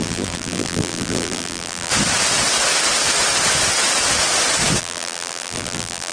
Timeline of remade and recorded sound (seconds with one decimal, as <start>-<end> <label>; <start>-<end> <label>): 0.0-1.9 remade; 1.9-4.8 recorded; 4.8-6.1 remade